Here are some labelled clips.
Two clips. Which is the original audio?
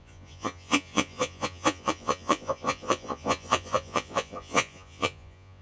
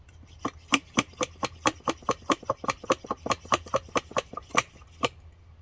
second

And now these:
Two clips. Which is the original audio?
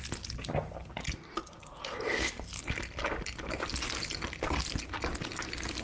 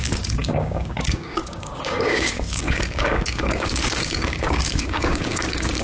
first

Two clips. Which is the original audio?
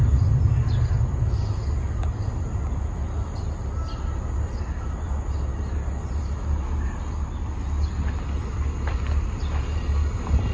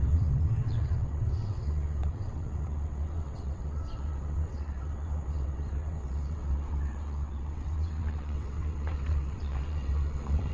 first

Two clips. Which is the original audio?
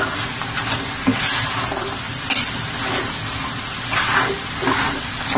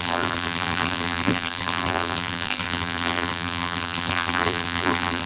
first